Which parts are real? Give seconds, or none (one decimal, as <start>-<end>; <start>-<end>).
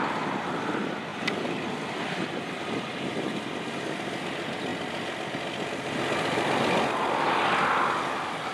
0.0-8.5